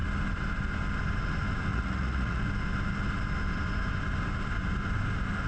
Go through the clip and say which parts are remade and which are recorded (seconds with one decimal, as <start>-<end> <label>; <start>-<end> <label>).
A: 0.0-1.7 recorded; 1.7-2.4 remade; 2.4-5.5 recorded